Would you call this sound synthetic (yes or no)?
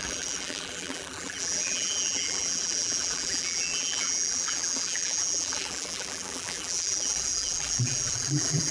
yes